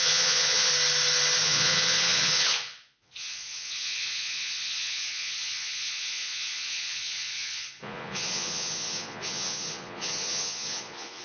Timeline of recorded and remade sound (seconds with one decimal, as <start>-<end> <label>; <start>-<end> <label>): 0.0-0.7 remade; 0.7-1.4 recorded; 1.4-11.2 remade